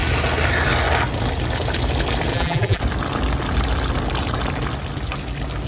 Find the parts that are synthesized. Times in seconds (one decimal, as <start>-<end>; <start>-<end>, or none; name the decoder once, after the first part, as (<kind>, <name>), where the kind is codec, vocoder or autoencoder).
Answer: 2.3-2.8 (vocoder, BigVGAN v2)